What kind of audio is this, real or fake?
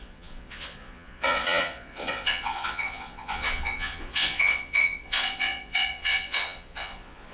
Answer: fake